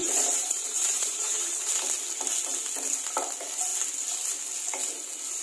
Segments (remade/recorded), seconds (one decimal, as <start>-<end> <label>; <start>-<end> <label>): 0.0-1.7 remade; 1.7-5.4 recorded